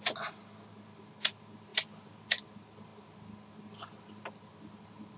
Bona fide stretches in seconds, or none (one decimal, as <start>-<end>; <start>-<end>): 0.0-5.2